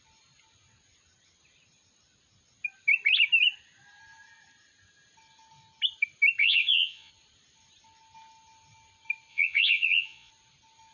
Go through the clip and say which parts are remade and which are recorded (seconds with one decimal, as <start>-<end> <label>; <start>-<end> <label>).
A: 0.0-6.4 recorded; 6.4-7.1 remade; 7.1-9.3 recorded; 9.3-10.3 remade; 10.3-10.9 recorded